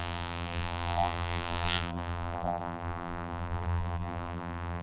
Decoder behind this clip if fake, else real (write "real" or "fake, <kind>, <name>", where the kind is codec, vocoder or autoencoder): fake, vocoder, BigVGAN v2